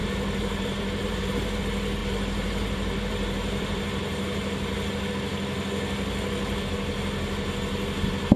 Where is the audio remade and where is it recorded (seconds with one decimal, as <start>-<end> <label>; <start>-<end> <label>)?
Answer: 0.0-1.6 remade; 1.6-2.0 recorded; 2.0-5.1 remade; 5.1-8.4 recorded